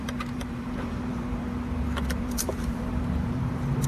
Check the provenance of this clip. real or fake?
fake